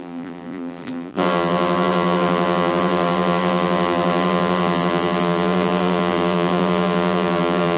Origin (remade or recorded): remade